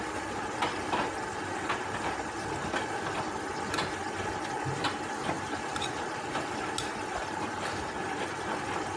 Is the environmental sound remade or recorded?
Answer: recorded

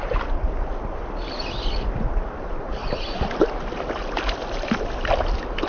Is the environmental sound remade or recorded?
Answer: recorded